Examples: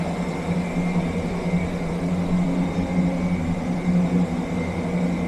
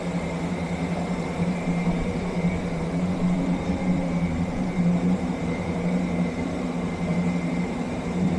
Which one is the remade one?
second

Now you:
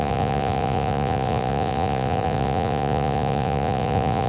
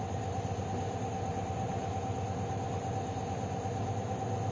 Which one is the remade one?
first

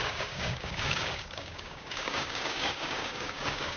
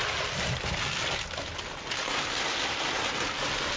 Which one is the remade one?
first